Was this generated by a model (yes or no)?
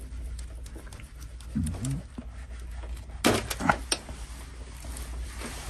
no